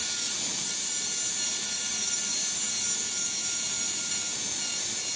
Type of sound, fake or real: real